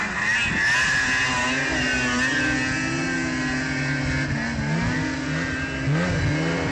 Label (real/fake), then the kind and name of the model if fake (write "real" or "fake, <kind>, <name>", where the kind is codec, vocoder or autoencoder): real